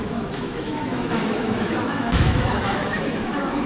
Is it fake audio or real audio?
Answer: fake